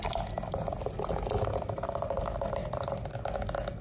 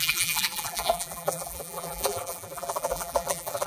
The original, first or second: first